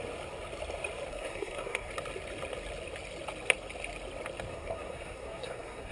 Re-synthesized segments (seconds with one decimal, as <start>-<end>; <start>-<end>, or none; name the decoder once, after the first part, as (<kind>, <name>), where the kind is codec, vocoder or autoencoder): 1.1-1.9 (codec, SNAC); 4.5-5.9